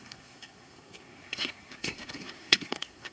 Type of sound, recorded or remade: remade